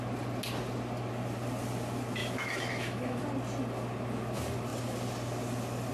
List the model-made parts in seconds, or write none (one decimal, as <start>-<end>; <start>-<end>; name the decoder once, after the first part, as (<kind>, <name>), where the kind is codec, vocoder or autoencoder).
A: 2.2-3.2 (autoencoder, DAC-VAE)